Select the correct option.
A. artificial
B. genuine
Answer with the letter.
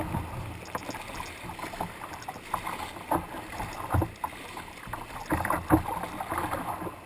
B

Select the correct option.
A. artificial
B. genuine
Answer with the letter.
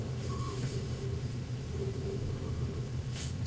A